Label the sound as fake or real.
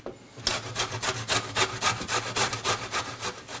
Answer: real